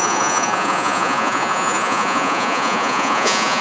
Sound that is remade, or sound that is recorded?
remade